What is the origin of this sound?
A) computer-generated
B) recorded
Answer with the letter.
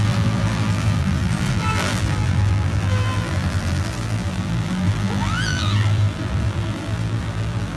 A